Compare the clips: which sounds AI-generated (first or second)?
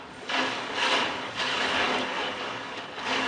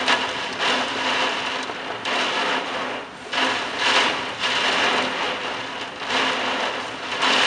first